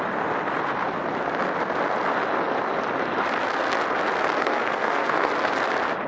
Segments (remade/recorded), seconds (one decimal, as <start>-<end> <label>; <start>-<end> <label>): 0.0-4.4 recorded; 4.4-5.3 remade; 5.3-6.1 recorded